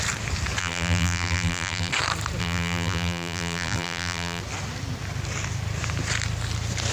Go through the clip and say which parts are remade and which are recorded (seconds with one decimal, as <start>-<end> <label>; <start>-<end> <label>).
0.0-0.6 recorded; 0.6-1.9 remade; 1.9-2.4 recorded; 2.4-4.4 remade; 4.4-6.9 recorded